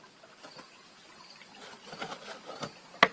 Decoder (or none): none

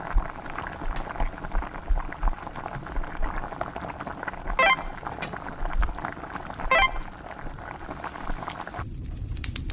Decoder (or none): none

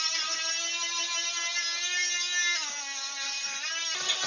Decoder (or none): none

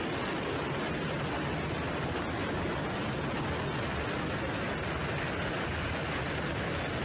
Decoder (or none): none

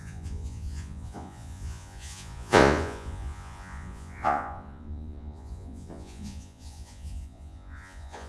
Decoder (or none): vocoder, Vocos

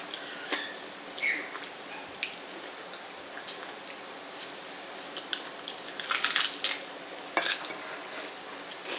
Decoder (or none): none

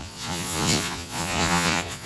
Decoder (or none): vocoder, Vocos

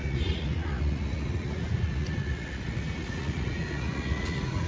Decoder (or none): vocoder, Vocos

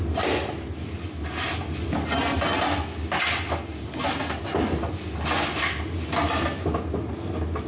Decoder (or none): none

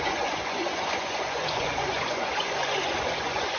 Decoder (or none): vocoder, Vocos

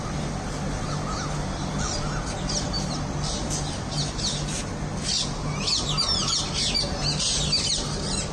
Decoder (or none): none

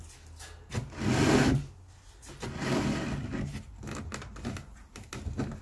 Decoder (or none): none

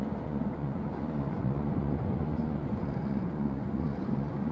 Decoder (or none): vocoder, Vocos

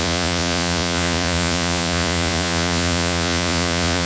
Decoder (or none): vocoder, Vocos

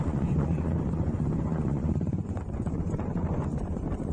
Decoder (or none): vocoder, Vocos